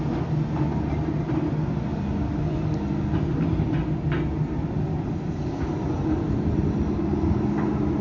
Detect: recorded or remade recorded